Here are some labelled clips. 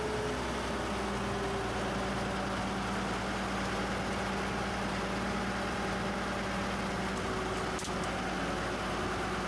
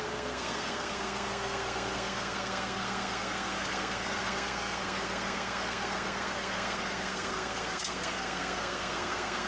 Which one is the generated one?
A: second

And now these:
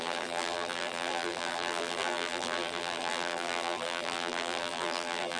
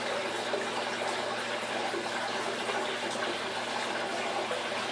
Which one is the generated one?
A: first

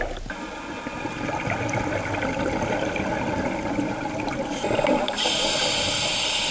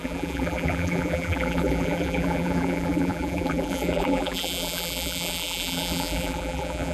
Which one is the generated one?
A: second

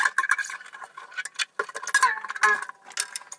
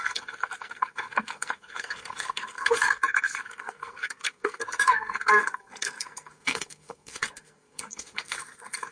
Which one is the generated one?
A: second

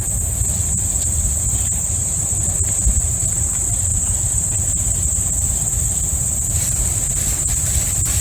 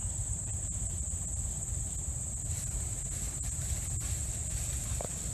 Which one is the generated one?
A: first